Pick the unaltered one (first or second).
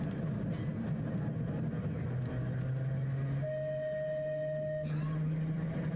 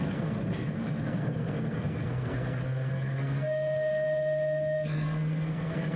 first